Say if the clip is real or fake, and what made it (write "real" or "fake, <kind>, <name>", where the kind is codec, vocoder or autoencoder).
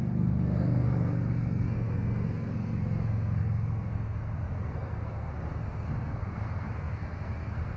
fake, codec, SNAC